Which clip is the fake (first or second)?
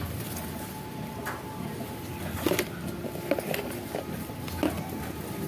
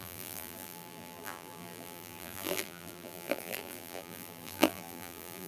second